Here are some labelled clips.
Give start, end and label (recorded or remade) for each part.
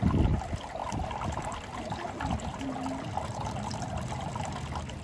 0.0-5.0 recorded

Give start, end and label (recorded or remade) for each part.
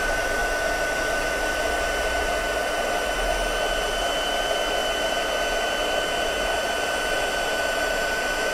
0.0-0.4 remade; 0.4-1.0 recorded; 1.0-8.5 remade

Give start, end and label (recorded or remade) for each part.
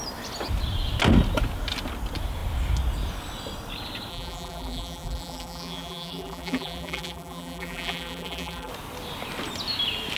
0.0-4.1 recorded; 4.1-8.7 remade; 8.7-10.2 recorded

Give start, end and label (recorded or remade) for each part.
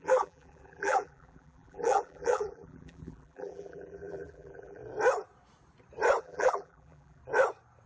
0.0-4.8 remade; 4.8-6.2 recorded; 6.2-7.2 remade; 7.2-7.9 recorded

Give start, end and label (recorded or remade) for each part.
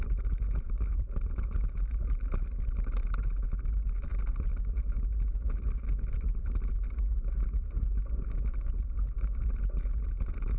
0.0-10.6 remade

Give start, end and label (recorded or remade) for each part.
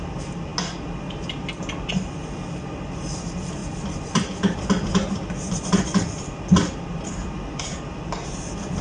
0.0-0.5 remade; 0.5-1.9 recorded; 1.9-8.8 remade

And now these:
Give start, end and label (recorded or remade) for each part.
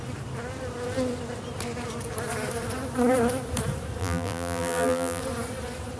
0.0-4.0 recorded; 4.0-5.2 remade; 5.2-6.0 recorded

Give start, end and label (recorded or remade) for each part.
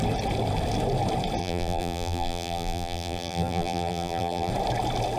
0.0-1.4 recorded; 1.4-4.5 remade; 4.5-5.2 recorded